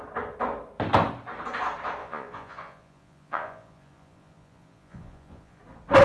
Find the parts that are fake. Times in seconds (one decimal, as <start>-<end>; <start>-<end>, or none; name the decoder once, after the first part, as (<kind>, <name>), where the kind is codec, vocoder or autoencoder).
2.0-5.6 (vocoder, Vocos)